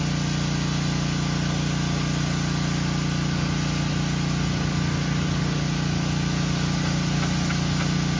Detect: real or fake real